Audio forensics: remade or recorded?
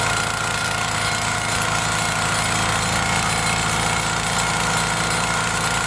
recorded